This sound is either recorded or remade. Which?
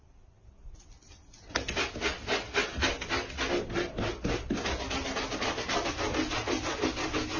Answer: recorded